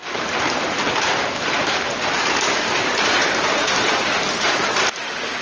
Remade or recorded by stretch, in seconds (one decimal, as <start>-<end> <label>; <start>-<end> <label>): 0.0-3.2 remade; 3.2-4.7 recorded; 4.7-5.4 remade